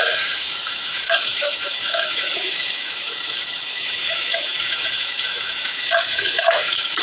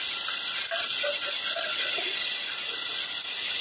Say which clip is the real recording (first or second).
second